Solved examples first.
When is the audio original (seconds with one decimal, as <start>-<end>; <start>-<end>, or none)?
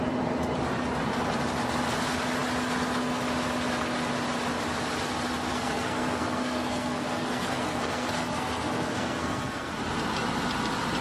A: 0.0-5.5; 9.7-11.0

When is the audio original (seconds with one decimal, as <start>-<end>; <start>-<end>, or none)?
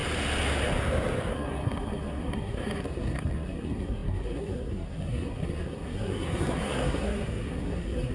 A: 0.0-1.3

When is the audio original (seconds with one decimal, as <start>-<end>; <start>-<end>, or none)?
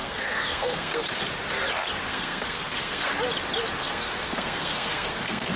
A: 1.1-2.1; 3.1-3.8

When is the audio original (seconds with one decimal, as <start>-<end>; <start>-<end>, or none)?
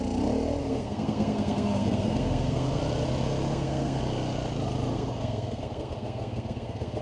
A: 0.0-0.6; 2.8-3.5; 4.0-4.9